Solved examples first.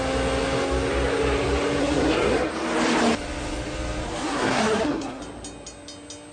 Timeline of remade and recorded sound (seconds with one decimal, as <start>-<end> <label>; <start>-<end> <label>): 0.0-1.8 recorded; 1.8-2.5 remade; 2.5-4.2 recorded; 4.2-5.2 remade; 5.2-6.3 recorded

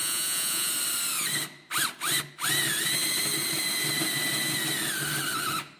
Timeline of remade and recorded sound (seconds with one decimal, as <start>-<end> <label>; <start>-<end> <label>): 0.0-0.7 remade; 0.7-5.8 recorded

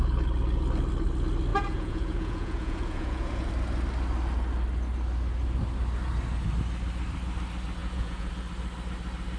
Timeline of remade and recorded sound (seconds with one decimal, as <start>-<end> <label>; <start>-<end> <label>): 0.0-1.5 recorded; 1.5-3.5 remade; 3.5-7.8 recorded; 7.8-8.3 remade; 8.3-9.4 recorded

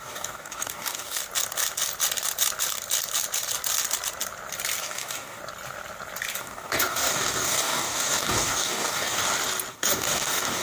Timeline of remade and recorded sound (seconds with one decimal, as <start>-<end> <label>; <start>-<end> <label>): 0.0-1.2 remade; 1.2-4.8 recorded; 4.8-5.4 remade; 5.4-6.4 recorded; 6.4-9.2 remade; 9.2-9.7 recorded; 9.7-10.6 remade

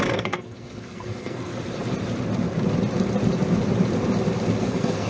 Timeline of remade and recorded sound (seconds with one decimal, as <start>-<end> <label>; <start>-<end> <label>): 0.0-1.5 remade; 1.5-4.6 recorded; 4.6-5.1 remade

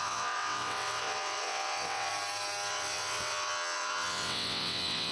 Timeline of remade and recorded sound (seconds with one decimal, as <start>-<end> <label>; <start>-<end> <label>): 0.0-2.1 remade; 2.1-2.7 recorded; 2.7-5.1 remade

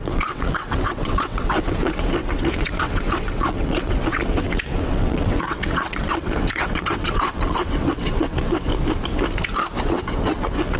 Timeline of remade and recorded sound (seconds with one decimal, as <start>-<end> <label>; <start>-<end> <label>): 0.0-8.7 remade; 8.7-9.8 recorded; 9.8-10.8 remade

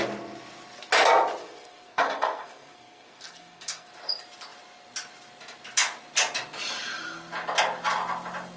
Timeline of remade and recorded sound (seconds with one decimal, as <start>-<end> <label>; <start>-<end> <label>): 0.0-1.4 recorded; 1.4-3.9 remade; 3.9-8.6 recorded